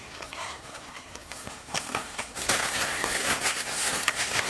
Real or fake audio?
fake